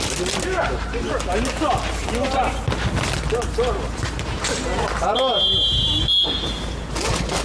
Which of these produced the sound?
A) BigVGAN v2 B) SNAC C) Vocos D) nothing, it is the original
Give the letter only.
D